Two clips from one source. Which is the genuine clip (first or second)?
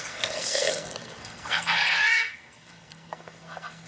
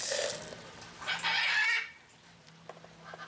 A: second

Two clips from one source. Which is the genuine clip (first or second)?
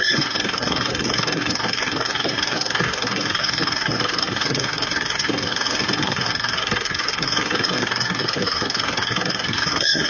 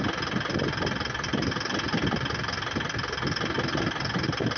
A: second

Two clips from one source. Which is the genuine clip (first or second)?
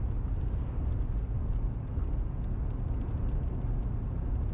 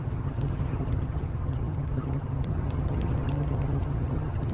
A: first